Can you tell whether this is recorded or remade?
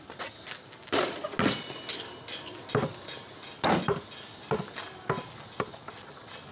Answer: recorded